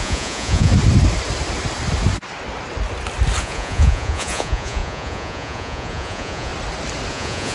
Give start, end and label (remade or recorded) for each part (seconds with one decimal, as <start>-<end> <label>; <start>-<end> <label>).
0.0-0.7 remade; 0.7-3.4 recorded; 3.4-6.5 remade; 6.5-7.1 recorded; 7.1-7.5 remade

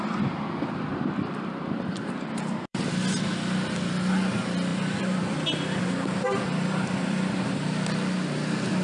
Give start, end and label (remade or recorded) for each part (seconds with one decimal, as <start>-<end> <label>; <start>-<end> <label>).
0.0-0.9 recorded; 0.9-2.8 remade; 2.8-4.7 recorded; 4.7-7.1 remade; 7.1-8.8 recorded

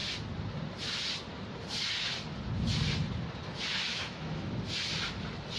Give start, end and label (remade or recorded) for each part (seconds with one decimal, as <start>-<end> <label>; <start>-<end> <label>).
0.0-3.9 recorded; 3.9-4.5 remade; 4.5-5.6 recorded